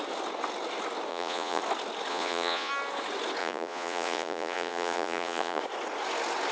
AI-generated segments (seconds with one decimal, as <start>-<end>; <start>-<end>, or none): 1.1-1.6; 2.1-2.7; 3.4-5.6